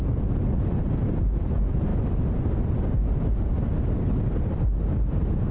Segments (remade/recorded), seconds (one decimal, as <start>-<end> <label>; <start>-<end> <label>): 0.0-5.5 recorded